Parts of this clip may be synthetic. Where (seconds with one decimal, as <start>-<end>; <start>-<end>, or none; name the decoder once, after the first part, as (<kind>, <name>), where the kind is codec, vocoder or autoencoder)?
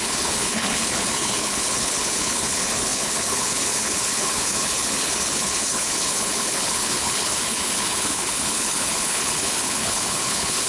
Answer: 0.0-10.7 (codec, HILCodec)